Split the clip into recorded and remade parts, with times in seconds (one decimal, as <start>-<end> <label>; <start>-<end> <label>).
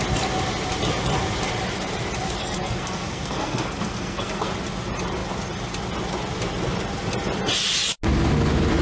0.0-2.4 recorded; 2.4-4.5 remade; 4.5-8.8 recorded